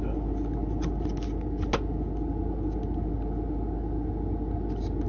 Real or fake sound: real